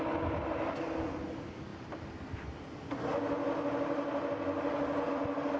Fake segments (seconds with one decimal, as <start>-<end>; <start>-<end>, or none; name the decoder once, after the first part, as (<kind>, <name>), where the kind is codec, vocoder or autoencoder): none

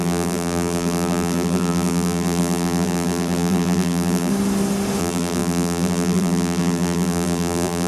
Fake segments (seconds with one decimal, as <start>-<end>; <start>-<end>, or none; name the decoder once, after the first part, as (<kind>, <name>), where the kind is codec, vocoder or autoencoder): 0.0-4.3 (vocoder, BigVGAN v2); 5.0-7.9